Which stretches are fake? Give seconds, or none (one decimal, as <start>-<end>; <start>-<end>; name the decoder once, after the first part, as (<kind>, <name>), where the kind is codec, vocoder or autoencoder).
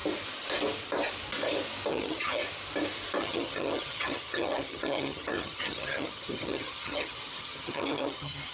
1.9-2.4 (vocoder, HiFi-GAN); 3.2-8.5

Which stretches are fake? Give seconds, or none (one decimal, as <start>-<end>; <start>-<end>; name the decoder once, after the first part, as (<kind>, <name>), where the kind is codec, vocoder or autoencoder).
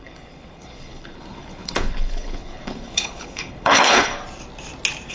0.0-4.1 (codec, HILCodec)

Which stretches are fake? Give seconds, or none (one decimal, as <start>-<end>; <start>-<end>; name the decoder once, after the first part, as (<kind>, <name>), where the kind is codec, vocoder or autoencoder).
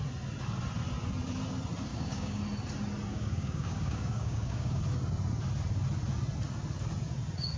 1.9-2.4 (codec, DAC); 3.1-4.8